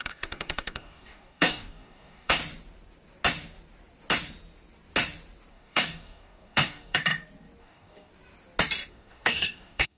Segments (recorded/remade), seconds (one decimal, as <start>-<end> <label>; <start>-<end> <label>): 0.0-2.4 remade; 2.4-5.5 recorded; 5.5-7.0 remade; 7.0-7.6 recorded; 7.6-8.1 remade; 8.1-8.9 recorded; 8.9-10.0 remade